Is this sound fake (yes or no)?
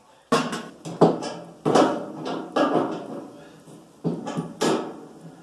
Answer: no